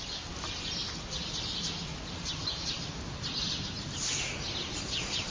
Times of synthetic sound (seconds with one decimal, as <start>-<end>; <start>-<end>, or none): 1.9-5.3